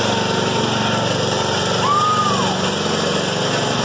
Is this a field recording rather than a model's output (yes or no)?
yes